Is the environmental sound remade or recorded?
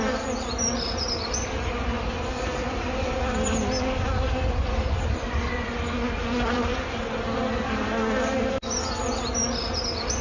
recorded